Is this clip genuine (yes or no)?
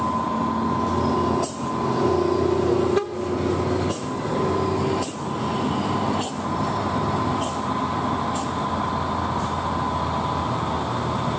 yes